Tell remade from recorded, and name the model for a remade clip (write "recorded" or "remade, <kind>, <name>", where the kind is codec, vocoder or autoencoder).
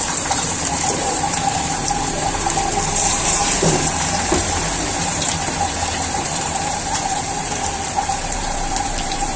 remade, vocoder, BigVGAN v2